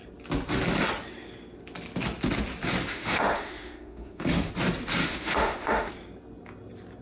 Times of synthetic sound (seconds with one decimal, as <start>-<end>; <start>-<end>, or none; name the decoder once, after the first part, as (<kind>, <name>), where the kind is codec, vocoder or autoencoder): 2.9-4.5 (autoencoder, DAC-VAE); 5.0-5.9